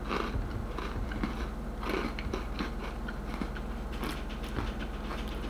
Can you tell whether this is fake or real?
real